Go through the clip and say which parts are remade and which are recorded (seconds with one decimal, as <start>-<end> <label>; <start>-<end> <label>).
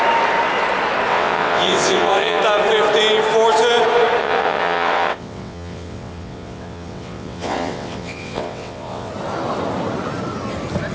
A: 0.0-1.1 recorded; 1.1-2.4 remade; 2.4-4.2 recorded; 4.2-9.1 remade; 9.1-10.9 recorded